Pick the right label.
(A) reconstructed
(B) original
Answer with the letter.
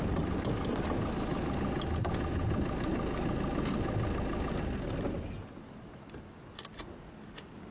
B